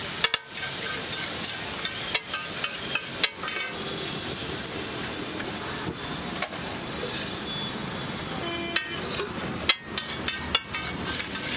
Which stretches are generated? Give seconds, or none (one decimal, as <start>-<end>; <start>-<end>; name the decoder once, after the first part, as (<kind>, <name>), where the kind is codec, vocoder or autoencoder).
none